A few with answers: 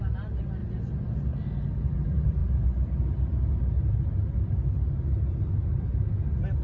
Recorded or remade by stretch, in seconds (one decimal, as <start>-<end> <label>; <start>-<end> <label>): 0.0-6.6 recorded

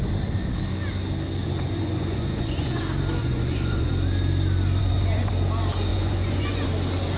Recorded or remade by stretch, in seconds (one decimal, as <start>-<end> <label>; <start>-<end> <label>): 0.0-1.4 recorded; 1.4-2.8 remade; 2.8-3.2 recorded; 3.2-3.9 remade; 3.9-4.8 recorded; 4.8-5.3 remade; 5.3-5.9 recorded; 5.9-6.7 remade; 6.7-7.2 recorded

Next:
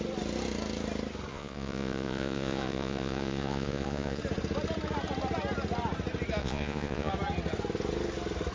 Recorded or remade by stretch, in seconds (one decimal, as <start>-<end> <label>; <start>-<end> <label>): 0.0-1.3 recorded; 1.3-4.2 remade; 4.2-6.4 recorded; 6.4-7.1 remade; 7.1-8.5 recorded

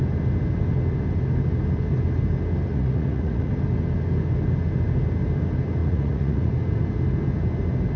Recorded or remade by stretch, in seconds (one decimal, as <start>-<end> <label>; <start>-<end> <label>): 0.0-2.7 recorded; 2.7-3.5 remade; 3.5-5.8 recorded; 5.8-6.5 remade; 6.5-8.0 recorded

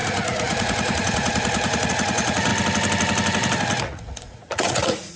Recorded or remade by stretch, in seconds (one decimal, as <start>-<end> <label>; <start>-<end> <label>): 0.0-2.5 remade; 2.5-3.8 recorded; 3.8-5.2 remade

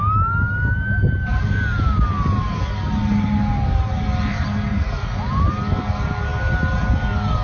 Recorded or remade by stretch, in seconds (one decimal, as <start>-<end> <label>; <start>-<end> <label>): 0.0-4.7 recorded; 4.7-5.2 remade; 5.2-7.4 recorded

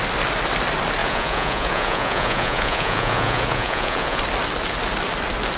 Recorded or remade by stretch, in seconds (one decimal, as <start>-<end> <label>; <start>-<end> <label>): 0.0-1.0 recorded; 1.0-4.2 remade; 4.2-5.6 recorded